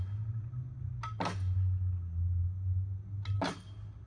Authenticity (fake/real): real